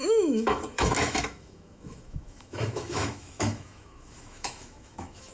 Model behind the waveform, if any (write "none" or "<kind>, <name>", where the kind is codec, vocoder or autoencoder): autoencoder, DAC-VAE